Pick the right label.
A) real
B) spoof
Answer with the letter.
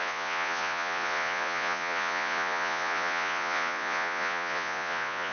B